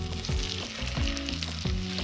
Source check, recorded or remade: recorded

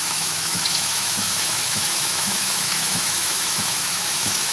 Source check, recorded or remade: remade